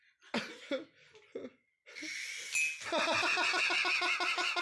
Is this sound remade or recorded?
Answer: recorded